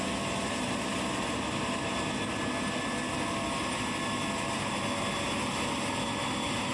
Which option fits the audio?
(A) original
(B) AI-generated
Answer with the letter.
A